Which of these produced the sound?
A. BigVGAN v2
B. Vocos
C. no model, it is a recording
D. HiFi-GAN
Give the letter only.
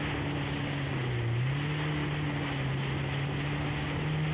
C